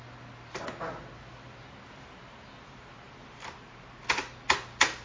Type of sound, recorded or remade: recorded